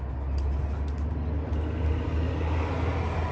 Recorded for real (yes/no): yes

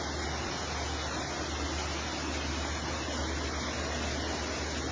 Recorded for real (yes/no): yes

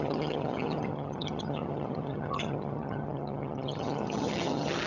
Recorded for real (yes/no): no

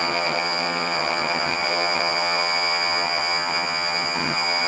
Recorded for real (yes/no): no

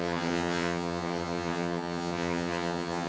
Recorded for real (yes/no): no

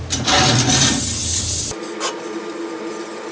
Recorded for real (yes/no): yes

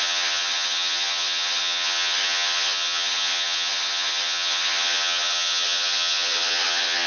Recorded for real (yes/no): no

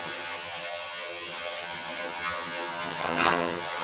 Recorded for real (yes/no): no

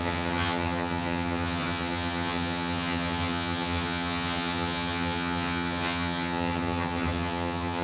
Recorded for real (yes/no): no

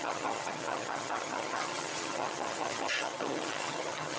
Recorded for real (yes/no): no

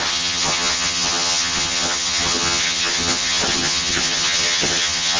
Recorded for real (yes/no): no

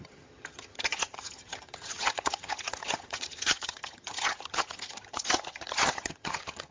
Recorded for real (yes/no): no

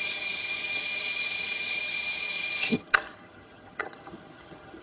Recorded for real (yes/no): no